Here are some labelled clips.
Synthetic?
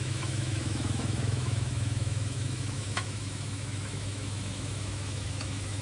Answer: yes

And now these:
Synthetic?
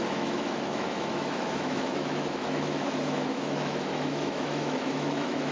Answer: yes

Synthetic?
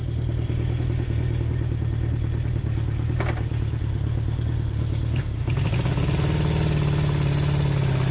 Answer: no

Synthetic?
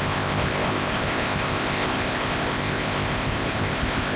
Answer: yes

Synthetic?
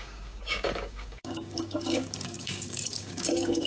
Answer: yes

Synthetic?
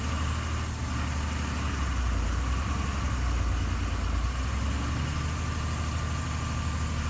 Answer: no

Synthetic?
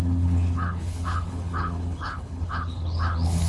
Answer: yes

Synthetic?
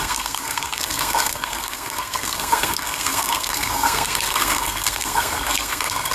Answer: yes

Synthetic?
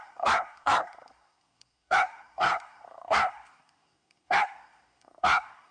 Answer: yes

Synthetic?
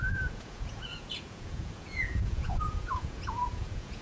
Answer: yes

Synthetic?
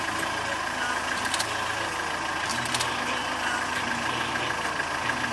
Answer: no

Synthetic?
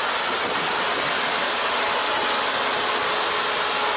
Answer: no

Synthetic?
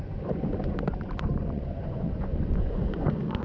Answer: yes